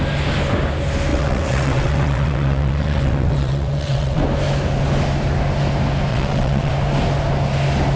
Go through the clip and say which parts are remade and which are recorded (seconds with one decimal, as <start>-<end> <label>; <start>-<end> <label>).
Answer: 0.0-1.1 recorded; 1.1-4.2 remade; 4.2-6.1 recorded; 6.1-6.7 remade; 6.7-8.0 recorded